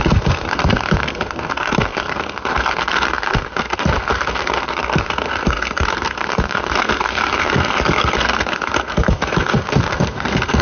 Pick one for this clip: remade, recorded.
remade